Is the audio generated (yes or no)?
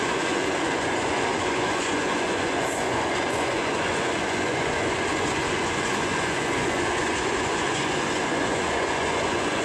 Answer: yes